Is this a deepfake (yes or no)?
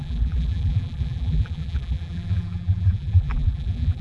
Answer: yes